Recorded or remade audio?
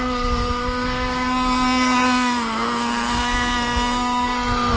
remade